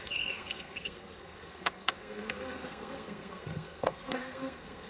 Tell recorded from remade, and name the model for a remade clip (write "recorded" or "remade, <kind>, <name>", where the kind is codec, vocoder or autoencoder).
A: remade, codec, SNAC